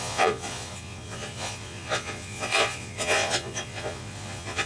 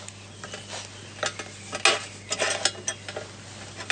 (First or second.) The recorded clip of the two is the second